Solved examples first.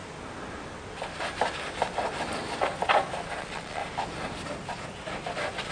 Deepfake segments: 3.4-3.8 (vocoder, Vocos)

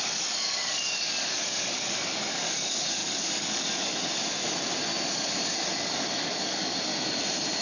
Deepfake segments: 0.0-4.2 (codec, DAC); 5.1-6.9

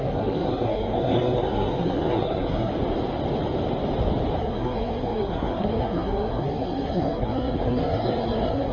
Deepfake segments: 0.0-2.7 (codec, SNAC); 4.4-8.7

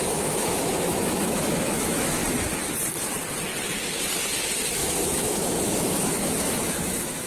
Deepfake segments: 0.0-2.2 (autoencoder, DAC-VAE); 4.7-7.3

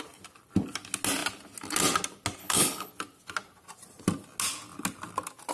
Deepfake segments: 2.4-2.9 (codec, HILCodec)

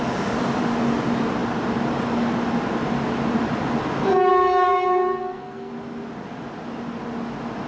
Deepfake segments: 4.3-5.7 (codec, SNAC)

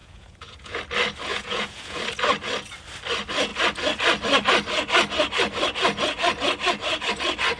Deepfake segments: 0.0-0.8 (vocoder, Vocos); 1.3-2.0

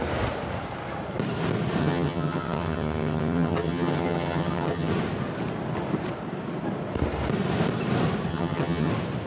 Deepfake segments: 1.8-4.9 (vocoder, HiFi-GAN); 8.3-8.9